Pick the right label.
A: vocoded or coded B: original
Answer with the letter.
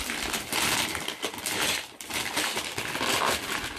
B